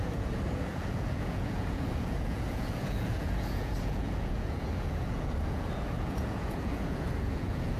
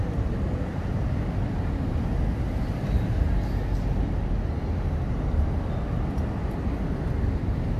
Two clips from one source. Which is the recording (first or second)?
second